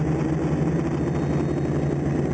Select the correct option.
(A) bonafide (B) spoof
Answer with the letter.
A